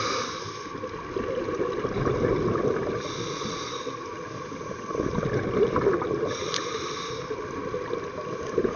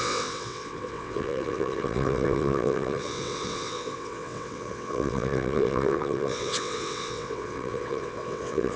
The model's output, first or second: second